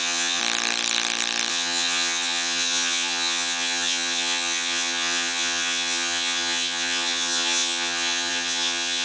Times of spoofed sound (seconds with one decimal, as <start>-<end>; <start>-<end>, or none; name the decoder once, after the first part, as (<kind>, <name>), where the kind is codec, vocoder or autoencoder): 0.0-0.4 (vocoder, HiFi-GAN); 1.5-9.0